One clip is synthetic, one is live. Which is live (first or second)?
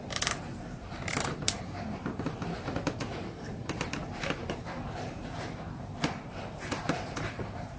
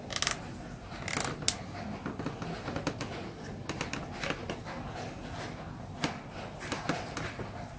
second